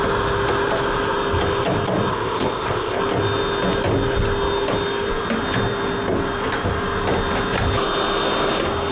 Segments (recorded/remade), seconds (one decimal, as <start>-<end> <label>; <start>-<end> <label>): 0.0-2.1 recorded; 2.1-3.0 remade; 3.0-8.9 recorded